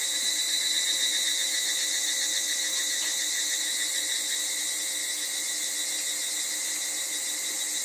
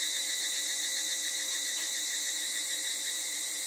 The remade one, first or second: second